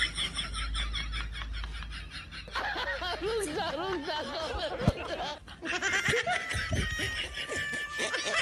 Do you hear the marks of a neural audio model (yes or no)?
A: no